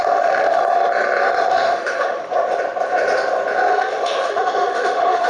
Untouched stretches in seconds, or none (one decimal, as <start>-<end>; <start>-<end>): 0.6-1.5; 2.2-3.7